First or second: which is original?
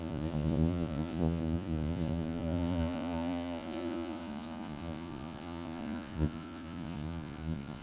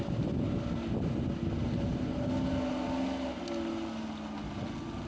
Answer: second